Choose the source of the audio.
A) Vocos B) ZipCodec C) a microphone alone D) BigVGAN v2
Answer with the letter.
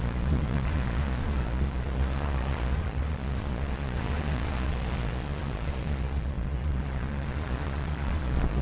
A